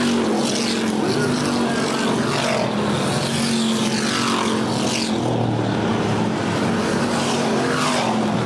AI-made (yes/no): no